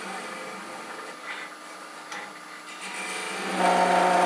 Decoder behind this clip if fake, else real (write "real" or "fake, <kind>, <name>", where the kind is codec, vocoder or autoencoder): real